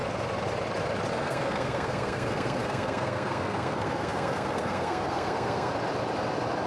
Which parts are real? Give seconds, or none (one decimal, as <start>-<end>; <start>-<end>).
0.0-1.1; 5.7-6.7